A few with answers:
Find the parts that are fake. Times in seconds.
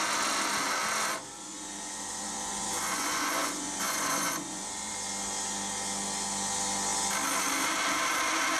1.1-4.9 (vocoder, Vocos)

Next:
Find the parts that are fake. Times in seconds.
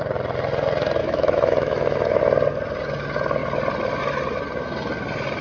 1.0-2.2 (autoencoder, DAC-VAE)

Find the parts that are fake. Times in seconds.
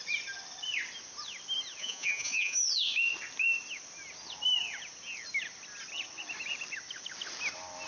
1.8-2.6 (vocoder, Vocos)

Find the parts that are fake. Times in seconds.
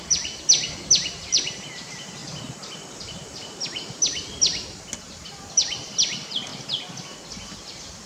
none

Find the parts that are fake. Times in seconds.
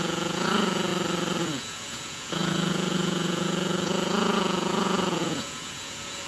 0.0-0.9 (vocoder, Vocos); 1.4-6.3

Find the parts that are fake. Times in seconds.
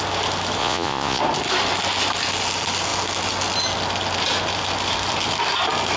0.6-1.2 (vocoder, Vocos)